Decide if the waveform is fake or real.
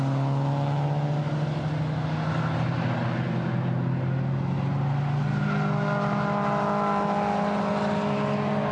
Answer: real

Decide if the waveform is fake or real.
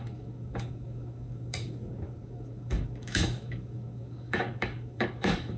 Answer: fake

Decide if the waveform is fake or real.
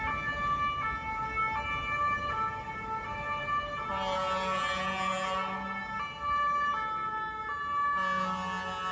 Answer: real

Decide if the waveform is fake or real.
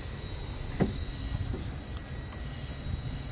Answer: fake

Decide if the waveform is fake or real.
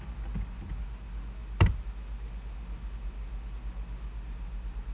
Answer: real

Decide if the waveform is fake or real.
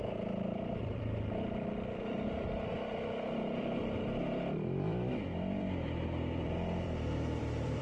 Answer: fake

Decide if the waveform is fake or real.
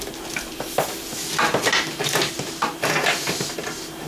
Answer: real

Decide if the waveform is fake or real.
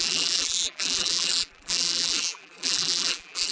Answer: fake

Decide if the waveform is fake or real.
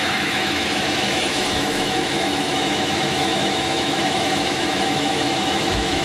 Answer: fake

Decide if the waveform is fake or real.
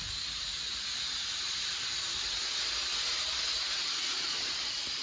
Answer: real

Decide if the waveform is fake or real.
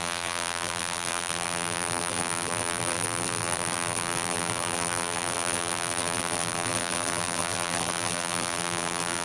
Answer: fake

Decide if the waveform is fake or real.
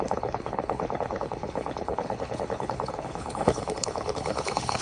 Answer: fake